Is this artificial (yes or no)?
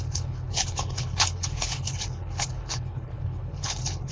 yes